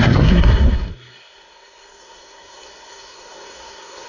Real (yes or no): no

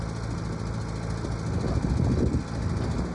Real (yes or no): yes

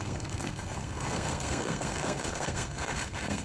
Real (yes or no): no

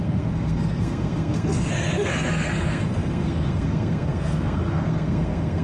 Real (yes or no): no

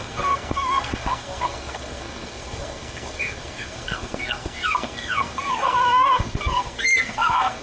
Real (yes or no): no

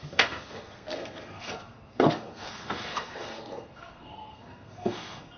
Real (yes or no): no